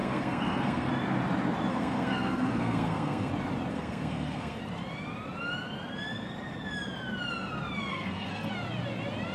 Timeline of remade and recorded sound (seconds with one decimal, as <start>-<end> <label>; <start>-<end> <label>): 0.0-0.9 remade; 0.9-1.7 recorded; 1.7-3.3 remade; 3.3-3.7 recorded; 3.7-4.6 remade; 4.6-7.9 recorded; 7.9-8.5 remade; 8.5-9.3 recorded